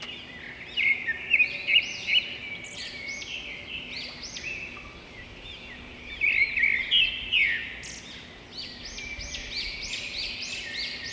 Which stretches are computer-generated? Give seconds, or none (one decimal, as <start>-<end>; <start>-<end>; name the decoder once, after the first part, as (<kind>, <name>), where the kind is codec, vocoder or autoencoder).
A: none